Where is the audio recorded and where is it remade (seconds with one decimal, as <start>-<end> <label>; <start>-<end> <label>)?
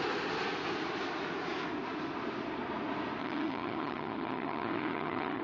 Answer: 0.0-3.2 recorded; 3.2-5.4 remade